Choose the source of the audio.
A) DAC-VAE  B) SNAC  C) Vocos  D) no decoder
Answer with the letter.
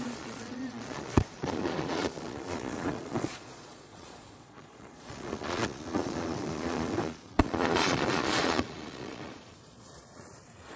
C